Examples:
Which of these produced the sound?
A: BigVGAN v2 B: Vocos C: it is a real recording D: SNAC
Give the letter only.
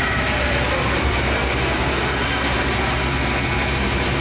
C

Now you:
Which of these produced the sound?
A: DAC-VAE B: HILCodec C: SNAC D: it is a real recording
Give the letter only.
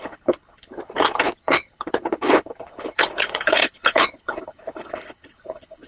B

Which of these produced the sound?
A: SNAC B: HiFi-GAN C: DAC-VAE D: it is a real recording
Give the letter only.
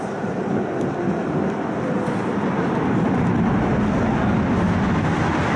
D